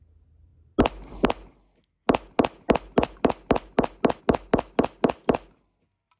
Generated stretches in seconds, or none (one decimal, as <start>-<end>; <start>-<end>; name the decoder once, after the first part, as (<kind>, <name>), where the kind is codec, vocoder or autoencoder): none

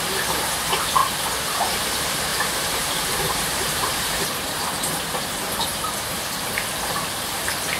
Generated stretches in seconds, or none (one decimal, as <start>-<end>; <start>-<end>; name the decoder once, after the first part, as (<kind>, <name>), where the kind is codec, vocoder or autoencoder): 2.3-4.9 (vocoder, BigVGAN v2); 5.7-6.5

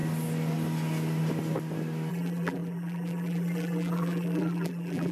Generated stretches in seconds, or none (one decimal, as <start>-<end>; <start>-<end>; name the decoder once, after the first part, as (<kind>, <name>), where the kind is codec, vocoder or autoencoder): 2.1-5.1 (vocoder, BigVGAN v2)